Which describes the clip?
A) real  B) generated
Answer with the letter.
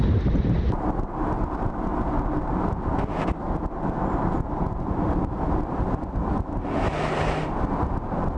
A